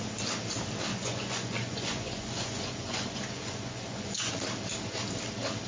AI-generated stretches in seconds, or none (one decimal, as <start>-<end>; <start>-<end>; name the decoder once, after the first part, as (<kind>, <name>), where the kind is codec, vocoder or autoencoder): 0.9-4.3 (vocoder, Vocos)